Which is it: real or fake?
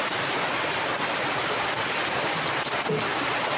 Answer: real